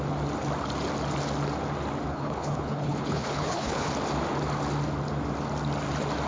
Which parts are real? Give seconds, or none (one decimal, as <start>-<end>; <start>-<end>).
0.0-2.1; 3.9-6.3